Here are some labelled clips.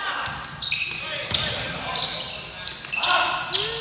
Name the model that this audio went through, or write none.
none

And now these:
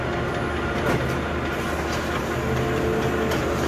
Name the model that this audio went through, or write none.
none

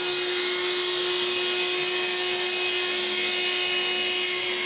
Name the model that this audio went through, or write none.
none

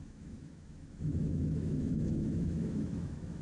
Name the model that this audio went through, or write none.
autoencoder, DAC-VAE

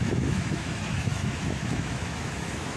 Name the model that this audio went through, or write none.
autoencoder, DAC-VAE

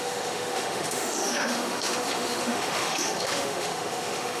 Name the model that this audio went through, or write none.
autoencoder, DAC-VAE